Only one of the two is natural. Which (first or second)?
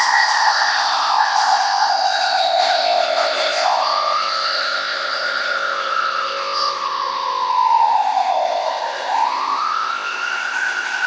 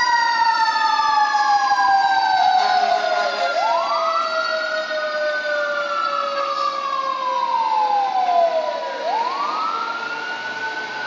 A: second